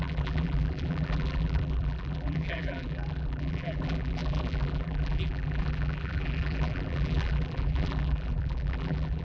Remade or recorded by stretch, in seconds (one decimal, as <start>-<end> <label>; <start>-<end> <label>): 0.0-9.2 remade

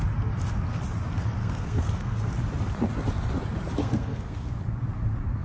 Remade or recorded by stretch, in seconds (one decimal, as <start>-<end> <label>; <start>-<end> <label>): 0.0-1.4 recorded; 1.4-2.3 remade; 2.3-3.8 recorded; 3.8-4.5 remade; 4.5-5.4 recorded